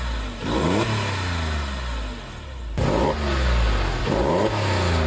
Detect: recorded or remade recorded